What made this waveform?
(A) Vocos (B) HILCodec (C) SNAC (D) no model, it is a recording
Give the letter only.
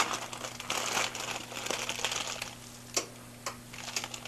D